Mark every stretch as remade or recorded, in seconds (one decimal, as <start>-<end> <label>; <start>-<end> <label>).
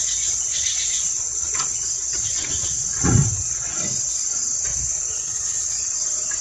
0.0-3.8 remade; 3.8-4.7 recorded; 4.7-5.8 remade; 5.8-6.4 recorded